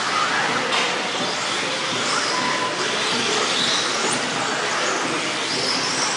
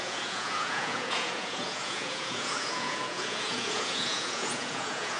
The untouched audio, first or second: first